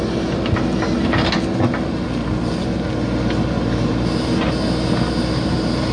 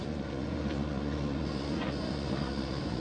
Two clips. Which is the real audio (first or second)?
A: first